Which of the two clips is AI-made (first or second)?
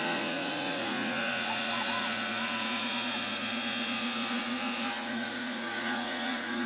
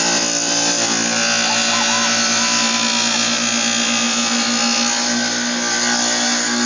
first